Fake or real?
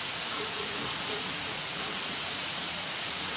fake